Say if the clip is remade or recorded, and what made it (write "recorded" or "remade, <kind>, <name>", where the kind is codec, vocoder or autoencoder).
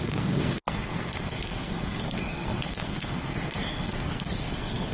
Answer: remade, codec, SNAC